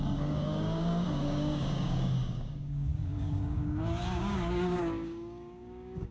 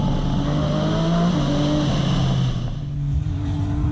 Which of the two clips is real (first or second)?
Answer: second